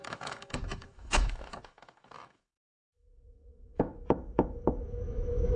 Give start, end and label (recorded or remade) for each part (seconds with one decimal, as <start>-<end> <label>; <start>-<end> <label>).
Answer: 0.0-5.6 remade